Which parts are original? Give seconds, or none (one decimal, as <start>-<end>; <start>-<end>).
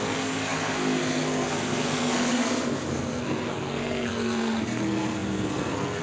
none